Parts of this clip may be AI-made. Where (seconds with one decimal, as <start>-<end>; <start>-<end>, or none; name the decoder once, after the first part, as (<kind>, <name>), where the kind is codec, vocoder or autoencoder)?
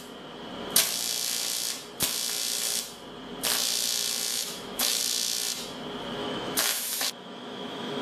4.3-5.0 (autoencoder, DAC-VAE); 6.2-8.0